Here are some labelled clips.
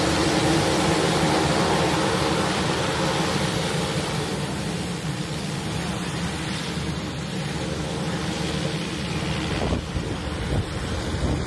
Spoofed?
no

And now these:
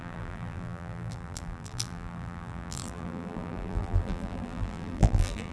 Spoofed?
yes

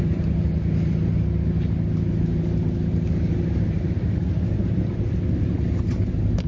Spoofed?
no